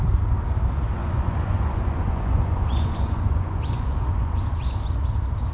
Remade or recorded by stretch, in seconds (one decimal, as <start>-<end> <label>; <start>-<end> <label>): 0.0-1.0 recorded; 1.0-4.3 remade; 4.3-5.5 recorded